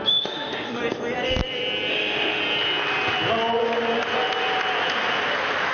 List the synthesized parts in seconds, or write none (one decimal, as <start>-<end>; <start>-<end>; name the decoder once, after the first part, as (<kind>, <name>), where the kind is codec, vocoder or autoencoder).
0.0-0.8 (autoencoder, DAC-VAE); 1.9-2.4